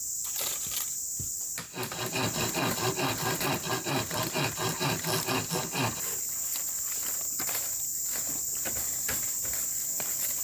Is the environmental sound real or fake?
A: real